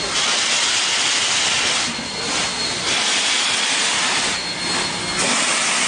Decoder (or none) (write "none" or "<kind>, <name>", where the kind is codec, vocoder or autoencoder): none